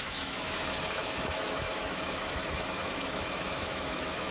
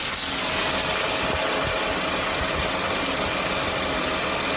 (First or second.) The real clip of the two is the second